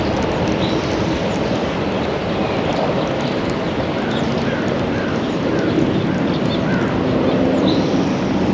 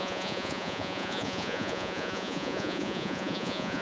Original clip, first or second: first